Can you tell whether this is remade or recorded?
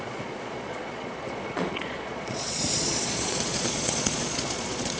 remade